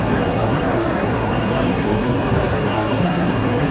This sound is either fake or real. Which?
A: fake